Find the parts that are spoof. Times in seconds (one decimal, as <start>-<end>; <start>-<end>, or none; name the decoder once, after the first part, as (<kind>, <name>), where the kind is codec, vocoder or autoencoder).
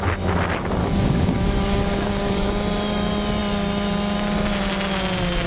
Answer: 0.8-2.5 (codec, DAC)